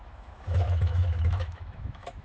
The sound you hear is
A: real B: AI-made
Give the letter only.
B